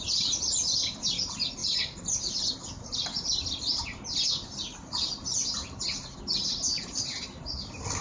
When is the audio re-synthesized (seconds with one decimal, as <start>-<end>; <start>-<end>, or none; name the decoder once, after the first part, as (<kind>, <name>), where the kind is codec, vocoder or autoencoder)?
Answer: none